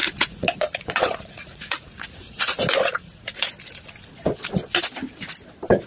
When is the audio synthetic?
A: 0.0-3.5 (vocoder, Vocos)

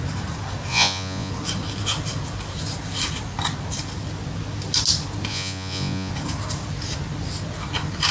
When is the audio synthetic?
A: 0.7-1.3 (vocoder, Vocos); 5.3-6.1

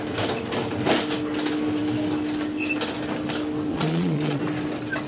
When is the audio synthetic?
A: 3.7-4.4 (vocoder, Vocos)

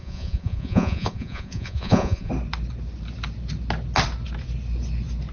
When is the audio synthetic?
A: 0.0-2.3 (vocoder, Vocos)

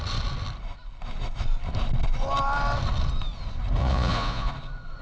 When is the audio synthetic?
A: 3.8-4.5 (vocoder, Vocos)

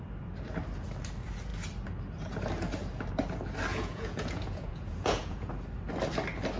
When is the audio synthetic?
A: 3.7-5.5 (vocoder, Vocos)